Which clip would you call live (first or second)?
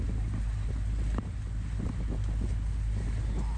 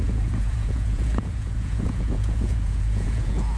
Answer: first